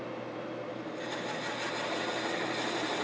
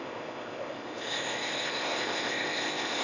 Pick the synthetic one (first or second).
second